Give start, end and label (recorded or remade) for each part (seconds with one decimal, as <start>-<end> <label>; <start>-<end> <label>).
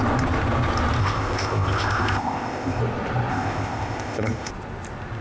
0.0-1.0 recorded; 1.0-2.8 remade; 2.8-3.3 recorded; 3.3-4.5 remade; 4.5-5.2 recorded